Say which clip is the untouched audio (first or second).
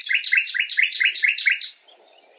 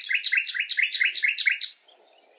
second